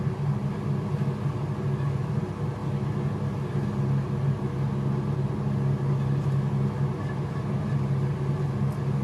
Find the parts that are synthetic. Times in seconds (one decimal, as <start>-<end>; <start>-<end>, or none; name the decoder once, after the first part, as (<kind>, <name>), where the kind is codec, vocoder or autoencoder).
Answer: none